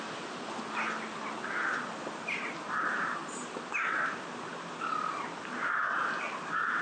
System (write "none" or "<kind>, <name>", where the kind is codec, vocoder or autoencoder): none